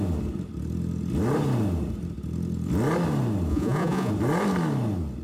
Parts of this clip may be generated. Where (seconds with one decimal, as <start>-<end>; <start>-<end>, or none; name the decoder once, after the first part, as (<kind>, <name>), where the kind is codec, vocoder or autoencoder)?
3.5-4.1 (vocoder, Vocos)